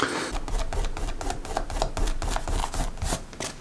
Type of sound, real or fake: real